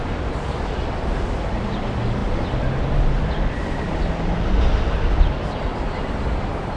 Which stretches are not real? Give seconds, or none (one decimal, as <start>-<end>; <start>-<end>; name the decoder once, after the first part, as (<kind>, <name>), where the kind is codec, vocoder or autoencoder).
none